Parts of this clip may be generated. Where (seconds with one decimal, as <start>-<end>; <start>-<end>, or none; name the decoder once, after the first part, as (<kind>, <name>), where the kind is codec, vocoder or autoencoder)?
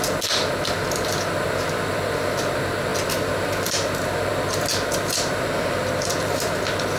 none